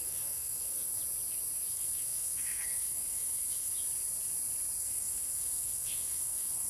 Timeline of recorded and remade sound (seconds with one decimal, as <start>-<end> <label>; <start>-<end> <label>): 0.0-1.0 remade; 1.0-1.7 recorded; 1.7-3.7 remade; 3.7-4.8 recorded; 4.8-6.7 remade